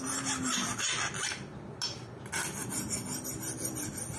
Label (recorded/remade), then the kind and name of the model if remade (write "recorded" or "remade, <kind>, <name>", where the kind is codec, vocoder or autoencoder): recorded